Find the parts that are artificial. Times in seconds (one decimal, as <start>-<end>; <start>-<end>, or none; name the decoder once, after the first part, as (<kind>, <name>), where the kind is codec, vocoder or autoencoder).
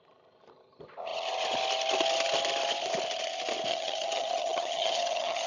3.7-5.5 (vocoder, HiFi-GAN)